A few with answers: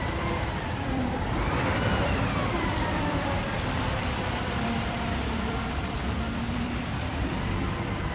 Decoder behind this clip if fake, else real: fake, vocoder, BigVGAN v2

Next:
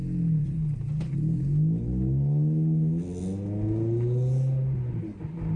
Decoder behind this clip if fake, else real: real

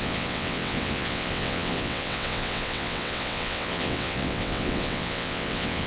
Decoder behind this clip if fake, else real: fake, vocoder, WaveNeXt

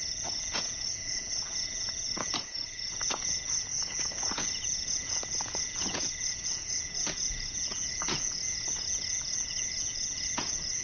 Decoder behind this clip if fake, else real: fake, vocoder, Vocos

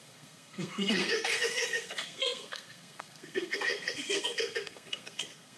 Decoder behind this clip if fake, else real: fake, codec, SNAC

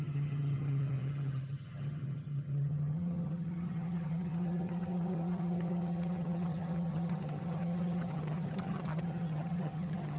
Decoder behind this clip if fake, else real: fake, vocoder, HiFi-GAN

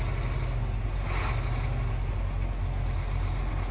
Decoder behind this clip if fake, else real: real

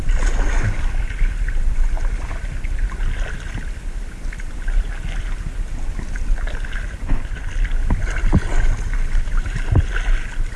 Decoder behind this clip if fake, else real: real